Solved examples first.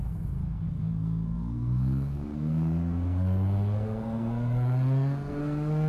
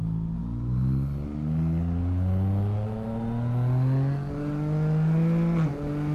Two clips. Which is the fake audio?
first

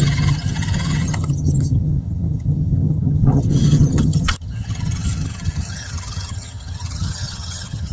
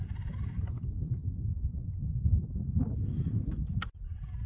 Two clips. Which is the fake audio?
first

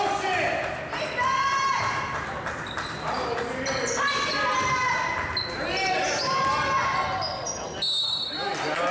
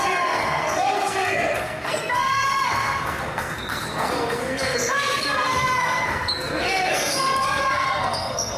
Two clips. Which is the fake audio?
second